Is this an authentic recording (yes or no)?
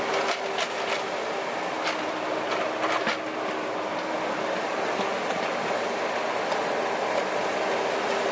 yes